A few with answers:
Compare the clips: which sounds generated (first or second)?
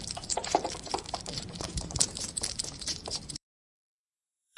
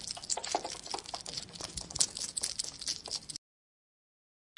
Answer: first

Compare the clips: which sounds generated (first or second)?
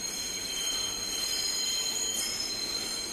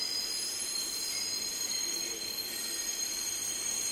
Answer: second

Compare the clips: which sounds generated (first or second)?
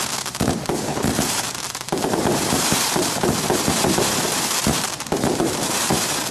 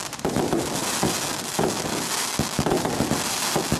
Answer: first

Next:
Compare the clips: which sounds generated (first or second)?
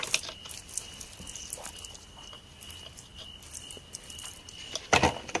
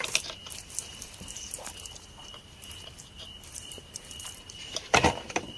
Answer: second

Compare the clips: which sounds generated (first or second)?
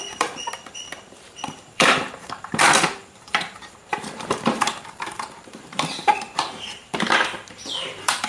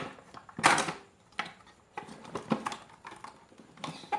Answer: first